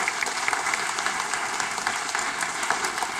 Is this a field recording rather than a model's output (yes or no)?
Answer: yes